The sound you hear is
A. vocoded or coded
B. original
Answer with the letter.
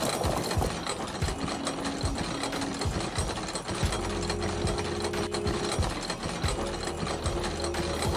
B